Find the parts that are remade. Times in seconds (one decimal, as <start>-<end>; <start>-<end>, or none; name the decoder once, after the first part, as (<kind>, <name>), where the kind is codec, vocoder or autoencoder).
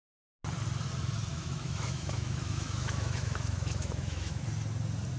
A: 1.3-4.4 (autoencoder, DAC-VAE)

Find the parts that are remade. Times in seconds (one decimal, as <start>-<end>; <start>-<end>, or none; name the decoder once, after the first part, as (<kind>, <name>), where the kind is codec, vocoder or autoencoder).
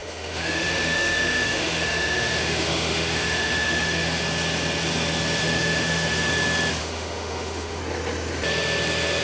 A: 0.0-4.2 (autoencoder, DAC-VAE); 5.4-6.3; 6.8-7.8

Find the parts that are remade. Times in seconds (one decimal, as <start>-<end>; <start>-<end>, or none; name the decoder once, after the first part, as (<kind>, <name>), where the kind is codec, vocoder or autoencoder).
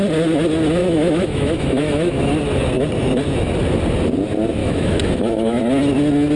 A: 0.8-2.3 (autoencoder, DAC-VAE); 4.6-5.6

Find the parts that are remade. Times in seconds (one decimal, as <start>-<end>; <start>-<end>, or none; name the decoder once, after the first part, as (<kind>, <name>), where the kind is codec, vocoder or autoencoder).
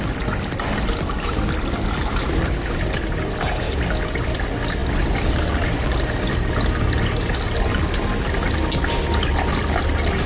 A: none